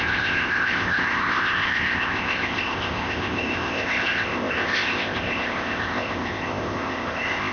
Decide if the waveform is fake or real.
fake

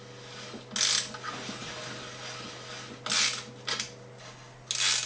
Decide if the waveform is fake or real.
real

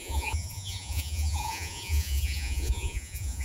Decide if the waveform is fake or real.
fake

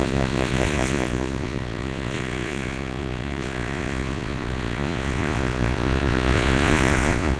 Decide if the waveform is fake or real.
fake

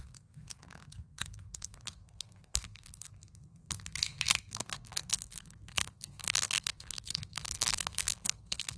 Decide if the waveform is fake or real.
fake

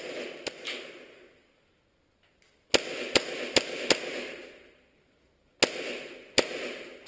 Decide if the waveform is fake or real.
real